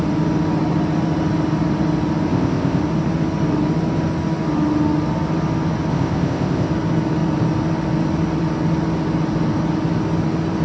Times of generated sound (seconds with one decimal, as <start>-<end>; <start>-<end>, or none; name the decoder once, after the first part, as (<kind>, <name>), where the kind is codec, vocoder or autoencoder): 2.3-2.8 (codec, ZipCodec); 5.9-6.7